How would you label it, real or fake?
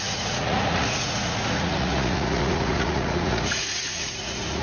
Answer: fake